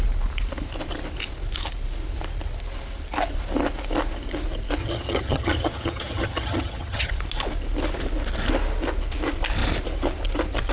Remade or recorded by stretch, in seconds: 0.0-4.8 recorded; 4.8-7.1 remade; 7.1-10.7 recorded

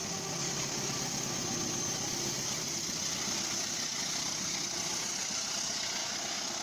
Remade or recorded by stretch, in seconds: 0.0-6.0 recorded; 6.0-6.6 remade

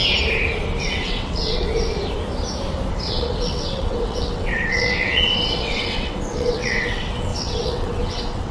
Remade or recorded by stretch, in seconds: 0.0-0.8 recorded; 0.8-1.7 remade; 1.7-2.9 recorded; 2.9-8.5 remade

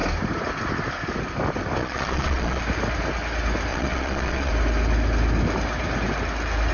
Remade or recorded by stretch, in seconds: 0.0-1.8 recorded; 1.8-2.6 remade; 2.6-3.7 recorded; 3.7-4.5 remade; 4.5-6.7 recorded

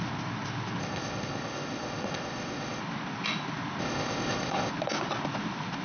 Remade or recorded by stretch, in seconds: 0.0-0.8 recorded; 0.8-2.8 remade; 2.8-3.8 recorded; 3.8-4.7 remade; 4.7-5.8 recorded

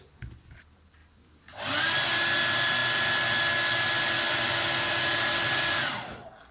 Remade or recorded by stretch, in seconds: 0.0-6.5 recorded

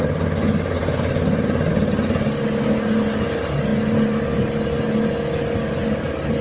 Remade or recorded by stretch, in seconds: 0.0-6.4 recorded